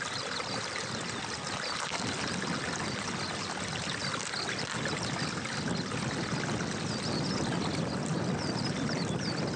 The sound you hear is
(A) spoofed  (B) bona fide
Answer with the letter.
B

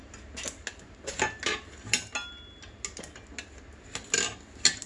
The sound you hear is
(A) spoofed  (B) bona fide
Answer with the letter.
B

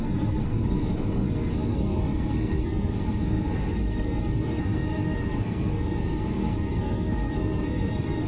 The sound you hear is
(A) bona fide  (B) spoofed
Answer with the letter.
B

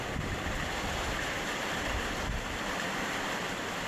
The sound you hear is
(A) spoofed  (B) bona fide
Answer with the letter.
B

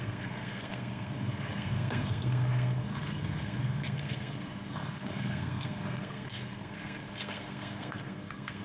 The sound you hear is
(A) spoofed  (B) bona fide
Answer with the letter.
A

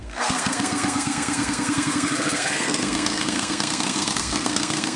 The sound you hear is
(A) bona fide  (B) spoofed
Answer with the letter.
B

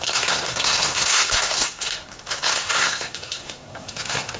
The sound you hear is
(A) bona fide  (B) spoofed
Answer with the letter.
B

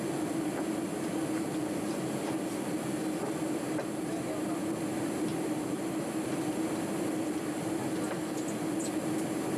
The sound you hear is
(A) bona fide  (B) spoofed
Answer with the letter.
A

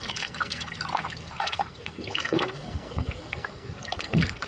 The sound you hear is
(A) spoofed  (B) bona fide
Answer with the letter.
A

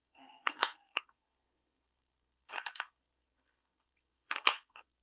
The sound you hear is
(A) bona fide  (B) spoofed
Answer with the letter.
B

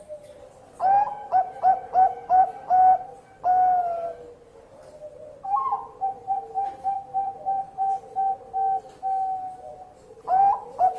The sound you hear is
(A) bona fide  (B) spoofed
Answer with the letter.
A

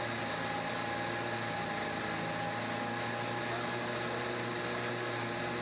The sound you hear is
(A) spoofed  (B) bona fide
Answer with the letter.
B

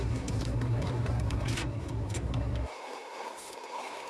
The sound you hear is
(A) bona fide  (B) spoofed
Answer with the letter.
B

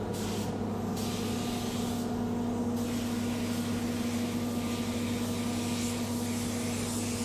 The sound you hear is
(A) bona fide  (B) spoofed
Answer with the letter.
A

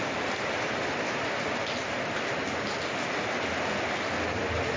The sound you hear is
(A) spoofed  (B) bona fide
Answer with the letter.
B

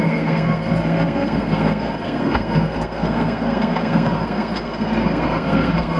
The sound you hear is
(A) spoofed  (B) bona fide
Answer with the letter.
A